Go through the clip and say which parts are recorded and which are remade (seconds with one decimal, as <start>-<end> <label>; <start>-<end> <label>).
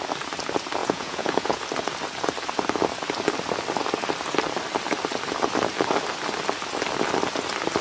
0.0-0.8 recorded; 0.8-1.6 remade; 1.6-7.8 recorded